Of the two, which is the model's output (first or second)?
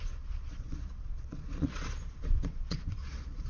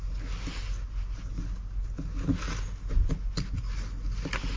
first